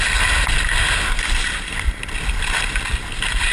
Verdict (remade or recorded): recorded